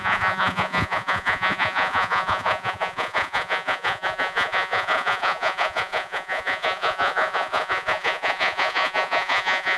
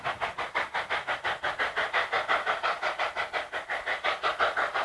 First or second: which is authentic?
second